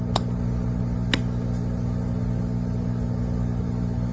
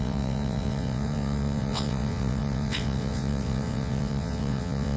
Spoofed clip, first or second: second